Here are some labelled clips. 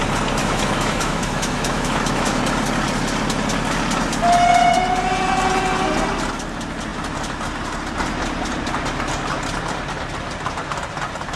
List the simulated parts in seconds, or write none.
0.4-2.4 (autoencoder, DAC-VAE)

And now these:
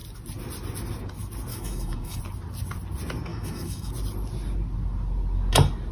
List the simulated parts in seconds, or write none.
1.5-2.2 (autoencoder, DAC-VAE); 3.3-3.9